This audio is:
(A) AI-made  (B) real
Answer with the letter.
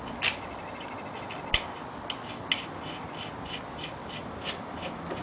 B